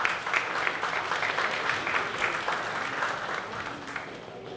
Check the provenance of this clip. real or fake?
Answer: real